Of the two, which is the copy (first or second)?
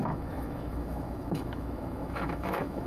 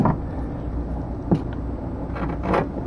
first